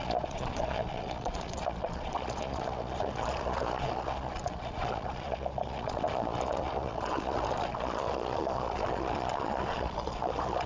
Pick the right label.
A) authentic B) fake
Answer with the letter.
B